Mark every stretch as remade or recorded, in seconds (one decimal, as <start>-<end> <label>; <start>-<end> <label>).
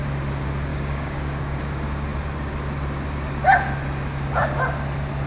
0.0-0.7 recorded; 0.7-1.6 remade; 1.6-5.3 recorded